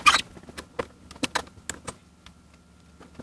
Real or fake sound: real